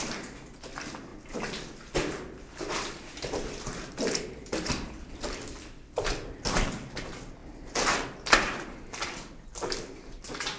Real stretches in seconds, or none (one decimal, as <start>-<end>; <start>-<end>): 0.0-1.1; 6.4-10.6